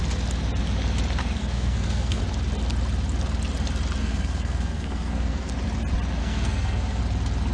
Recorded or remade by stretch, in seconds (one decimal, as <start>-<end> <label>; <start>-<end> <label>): 0.0-1.4 recorded; 1.4-2.2 remade; 2.2-4.0 recorded; 4.0-5.5 remade; 5.5-6.2 recorded; 6.2-7.0 remade; 7.0-7.5 recorded